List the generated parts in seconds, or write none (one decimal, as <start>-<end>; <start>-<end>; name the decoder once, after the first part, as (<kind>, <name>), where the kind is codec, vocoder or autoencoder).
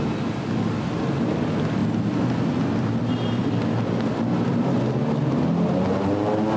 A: none